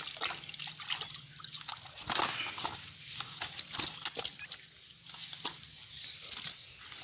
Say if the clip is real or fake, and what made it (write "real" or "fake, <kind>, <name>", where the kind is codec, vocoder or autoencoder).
real